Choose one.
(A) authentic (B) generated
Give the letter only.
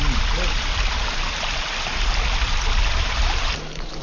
A